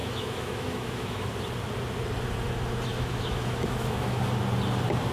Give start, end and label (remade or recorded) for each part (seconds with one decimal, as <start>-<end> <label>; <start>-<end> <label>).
0.0-1.3 remade; 1.3-2.9 recorded; 2.9-4.2 remade; 4.2-5.1 recorded